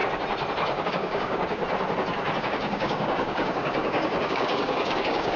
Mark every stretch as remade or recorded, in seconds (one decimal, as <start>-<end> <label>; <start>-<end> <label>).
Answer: 0.0-0.9 recorded; 0.9-1.6 remade; 1.6-2.4 recorded; 2.4-5.4 remade